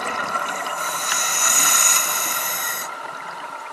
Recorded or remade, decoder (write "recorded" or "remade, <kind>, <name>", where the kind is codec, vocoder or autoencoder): recorded